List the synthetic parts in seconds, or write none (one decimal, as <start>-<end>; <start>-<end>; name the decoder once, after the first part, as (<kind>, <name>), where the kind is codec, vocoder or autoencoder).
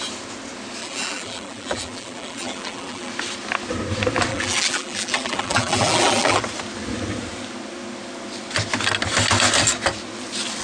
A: 0.8-3.1 (vocoder, BigVGAN v2); 4.3-6.4